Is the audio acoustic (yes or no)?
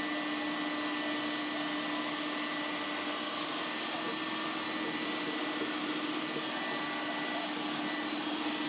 yes